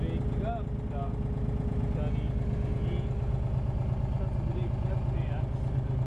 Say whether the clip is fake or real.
real